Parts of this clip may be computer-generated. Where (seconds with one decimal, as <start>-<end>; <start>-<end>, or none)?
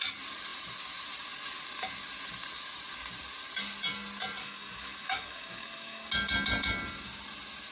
4.4-6.1